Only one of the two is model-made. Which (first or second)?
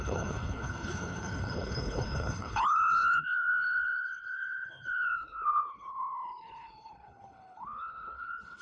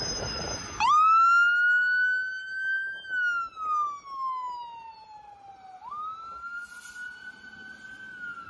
first